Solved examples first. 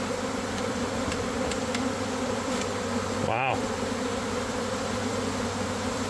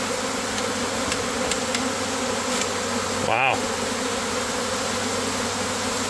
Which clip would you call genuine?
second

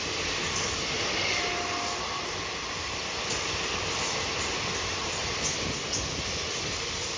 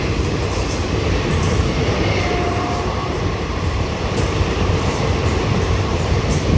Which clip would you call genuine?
first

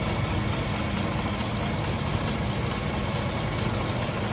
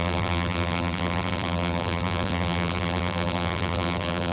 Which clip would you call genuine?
first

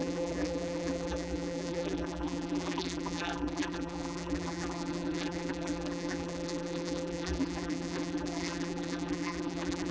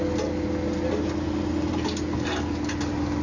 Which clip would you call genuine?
second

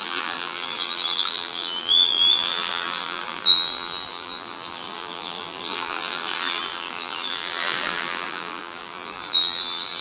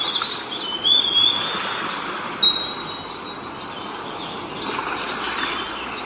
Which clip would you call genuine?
second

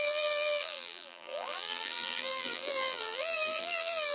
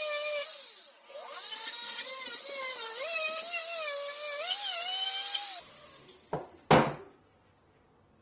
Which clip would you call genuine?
second